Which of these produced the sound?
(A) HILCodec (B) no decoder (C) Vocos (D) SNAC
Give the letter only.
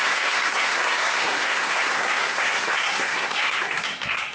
D